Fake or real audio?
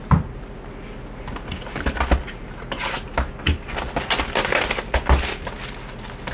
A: real